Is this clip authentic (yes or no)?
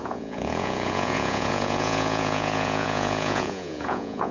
no